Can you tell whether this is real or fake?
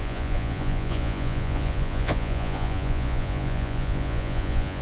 fake